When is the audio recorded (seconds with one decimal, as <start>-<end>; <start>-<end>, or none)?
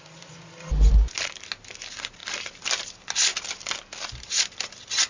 0.0-5.1